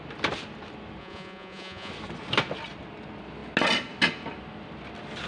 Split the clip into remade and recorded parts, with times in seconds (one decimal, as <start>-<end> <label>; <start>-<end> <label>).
0.0-1.0 recorded; 1.0-1.9 remade; 1.9-5.3 recorded